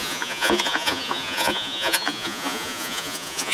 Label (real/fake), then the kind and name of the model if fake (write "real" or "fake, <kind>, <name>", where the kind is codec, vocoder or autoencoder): fake, vocoder, Vocos